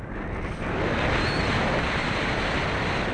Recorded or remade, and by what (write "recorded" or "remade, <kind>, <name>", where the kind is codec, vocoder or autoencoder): recorded